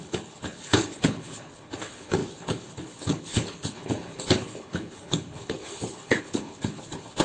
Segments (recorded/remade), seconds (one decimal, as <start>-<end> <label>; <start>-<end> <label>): 0.0-7.2 remade